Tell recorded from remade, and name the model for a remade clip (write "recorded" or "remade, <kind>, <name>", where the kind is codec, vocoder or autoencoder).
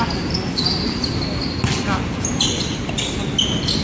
recorded